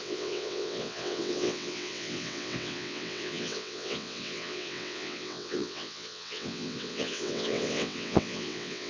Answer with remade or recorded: remade